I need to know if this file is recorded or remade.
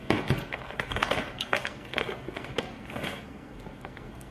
remade